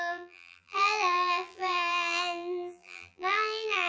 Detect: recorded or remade remade